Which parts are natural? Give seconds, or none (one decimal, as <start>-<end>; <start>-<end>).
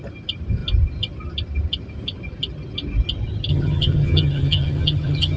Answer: 0.0-3.5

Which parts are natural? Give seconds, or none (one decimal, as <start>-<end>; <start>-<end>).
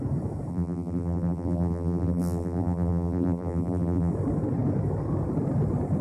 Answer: 0.0-0.5; 4.1-6.0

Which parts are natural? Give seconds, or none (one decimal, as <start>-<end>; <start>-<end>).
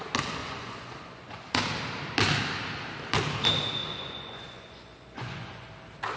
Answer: 0.0-0.4; 1.6-3.8; 5.7-6.2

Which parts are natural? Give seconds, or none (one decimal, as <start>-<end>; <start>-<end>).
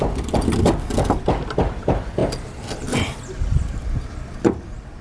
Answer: 0.0-5.0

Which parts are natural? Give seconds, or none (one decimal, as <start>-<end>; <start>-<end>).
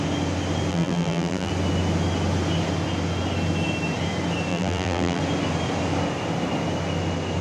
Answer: 0.0-0.7; 1.5-4.5; 5.2-7.4